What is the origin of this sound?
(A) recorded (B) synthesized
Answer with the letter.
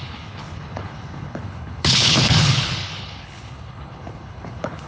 B